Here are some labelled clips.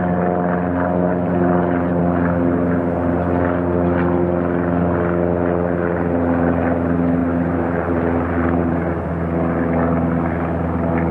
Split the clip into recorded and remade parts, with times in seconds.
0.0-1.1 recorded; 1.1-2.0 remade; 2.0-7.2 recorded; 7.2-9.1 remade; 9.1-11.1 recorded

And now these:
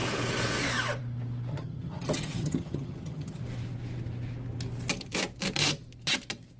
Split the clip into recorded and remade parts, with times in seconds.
0.0-1.5 recorded; 1.5-3.4 remade; 3.4-6.6 recorded